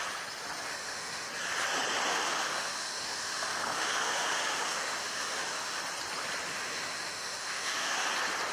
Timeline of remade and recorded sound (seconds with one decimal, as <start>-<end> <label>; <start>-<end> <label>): 0.0-0.7 recorded; 0.7-1.3 remade; 1.3-2.1 recorded; 2.1-5.8 remade; 5.8-6.5 recorded; 6.5-8.0 remade; 8.0-8.5 recorded